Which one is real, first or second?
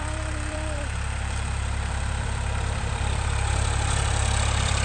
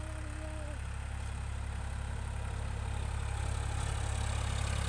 second